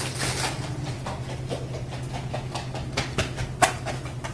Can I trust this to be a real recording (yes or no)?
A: yes